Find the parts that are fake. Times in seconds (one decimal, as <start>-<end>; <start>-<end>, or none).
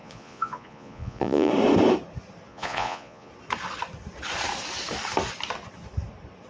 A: 0.0-1.5; 2.5-3.3